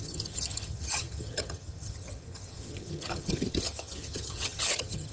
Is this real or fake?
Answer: fake